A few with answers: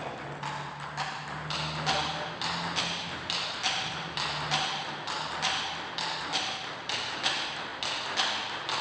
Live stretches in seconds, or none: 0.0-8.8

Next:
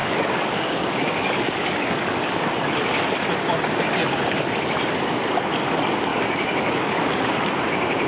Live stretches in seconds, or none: 2.4-6.1; 7.3-8.1

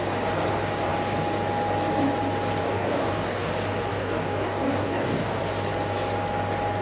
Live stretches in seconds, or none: 0.0-2.6; 3.5-3.9; 5.4-6.8